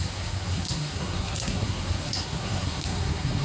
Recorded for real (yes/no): no